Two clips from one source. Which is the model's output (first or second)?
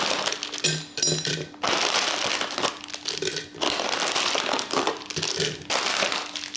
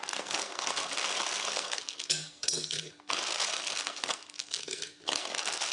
second